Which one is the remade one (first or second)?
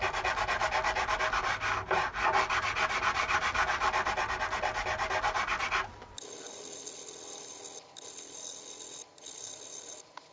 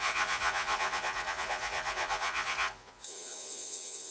second